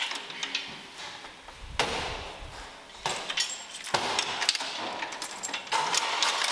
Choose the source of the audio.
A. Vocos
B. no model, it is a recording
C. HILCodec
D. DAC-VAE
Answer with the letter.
B